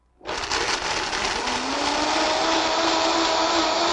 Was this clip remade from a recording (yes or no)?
no